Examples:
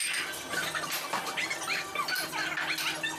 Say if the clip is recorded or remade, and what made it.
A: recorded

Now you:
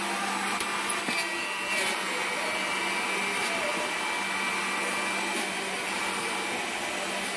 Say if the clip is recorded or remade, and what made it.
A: recorded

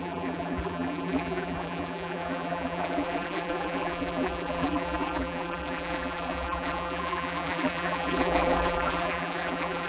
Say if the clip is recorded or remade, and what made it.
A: remade, vocoder, BigVGAN v2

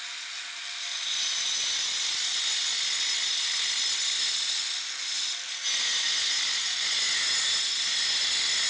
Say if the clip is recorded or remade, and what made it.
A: recorded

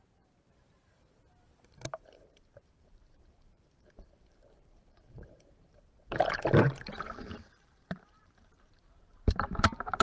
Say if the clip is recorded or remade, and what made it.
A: remade, vocoder, BigVGAN v2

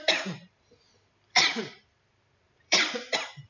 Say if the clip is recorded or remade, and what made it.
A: remade, vocoder, BigVGAN v2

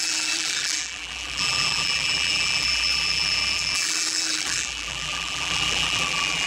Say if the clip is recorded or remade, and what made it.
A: remade, vocoder, BigVGAN v2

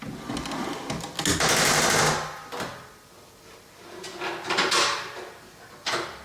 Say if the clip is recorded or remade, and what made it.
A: recorded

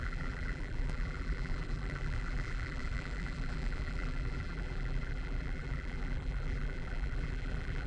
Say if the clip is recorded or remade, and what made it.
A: remade, vocoder, BigVGAN v2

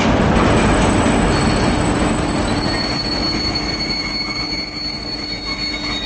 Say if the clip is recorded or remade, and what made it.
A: recorded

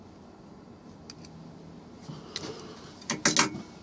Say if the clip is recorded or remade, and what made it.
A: recorded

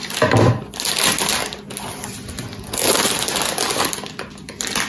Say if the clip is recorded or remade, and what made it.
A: recorded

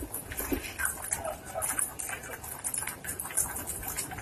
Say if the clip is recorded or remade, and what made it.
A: recorded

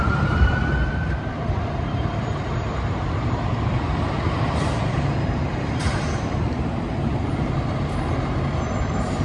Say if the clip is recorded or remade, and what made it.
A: remade, vocoder, BigVGAN v2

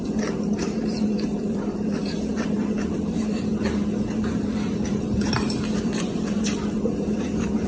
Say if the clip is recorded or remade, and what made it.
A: remade, vocoder, BigVGAN v2